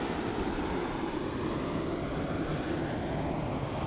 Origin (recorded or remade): recorded